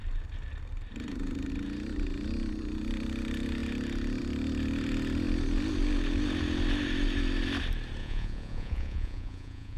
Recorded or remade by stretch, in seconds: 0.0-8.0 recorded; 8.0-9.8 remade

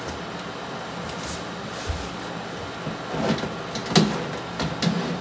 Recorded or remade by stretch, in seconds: 0.0-5.2 recorded

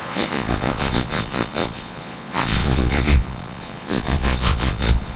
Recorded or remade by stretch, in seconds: 0.0-5.2 remade